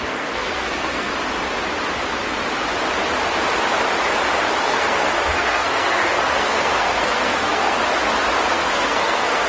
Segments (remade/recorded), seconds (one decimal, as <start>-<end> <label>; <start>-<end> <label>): 0.0-1.1 remade; 1.1-4.6 recorded; 4.6-7.8 remade; 7.8-8.5 recorded; 8.5-9.5 remade